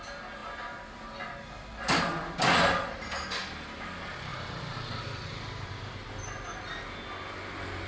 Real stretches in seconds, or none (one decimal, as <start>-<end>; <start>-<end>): 0.0-7.9